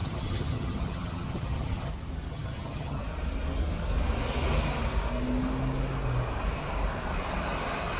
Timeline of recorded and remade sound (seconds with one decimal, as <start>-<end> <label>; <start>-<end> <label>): 0.0-1.9 remade; 1.9-2.3 recorded; 2.3-3.0 remade; 3.0-8.0 recorded